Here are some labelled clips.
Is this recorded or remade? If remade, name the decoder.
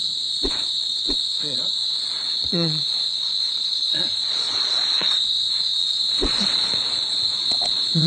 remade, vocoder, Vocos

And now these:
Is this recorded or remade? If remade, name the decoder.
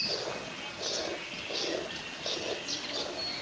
recorded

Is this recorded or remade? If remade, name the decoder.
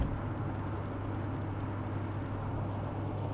recorded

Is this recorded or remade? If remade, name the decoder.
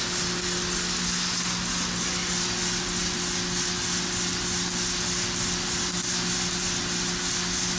recorded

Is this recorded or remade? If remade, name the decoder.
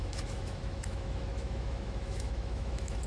remade, autoencoder, DAC-VAE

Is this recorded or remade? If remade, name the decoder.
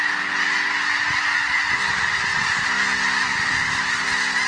recorded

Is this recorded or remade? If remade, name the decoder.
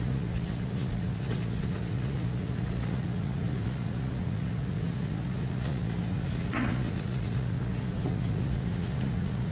remade, vocoder, Vocos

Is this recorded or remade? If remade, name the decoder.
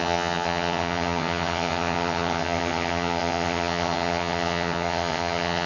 remade, vocoder, HiFi-GAN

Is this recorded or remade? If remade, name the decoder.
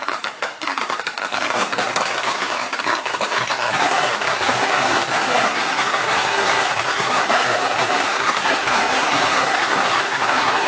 remade, codec, SNAC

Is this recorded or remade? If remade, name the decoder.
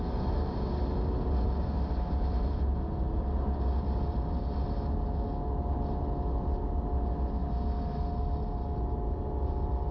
recorded